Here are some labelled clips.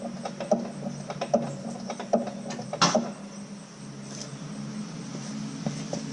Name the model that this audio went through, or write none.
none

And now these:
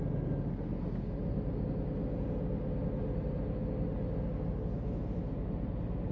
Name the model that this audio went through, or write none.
none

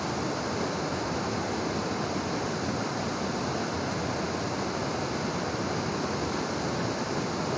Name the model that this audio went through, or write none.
none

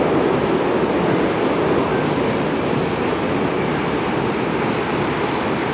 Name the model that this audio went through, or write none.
none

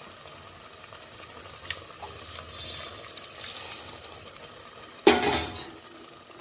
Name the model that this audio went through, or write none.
none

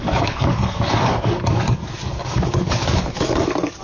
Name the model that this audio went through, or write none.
codec, DAC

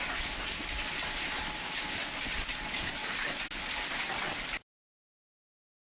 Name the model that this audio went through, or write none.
none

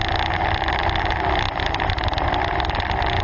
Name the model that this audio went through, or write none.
none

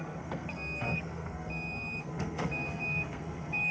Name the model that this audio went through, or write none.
codec, SNAC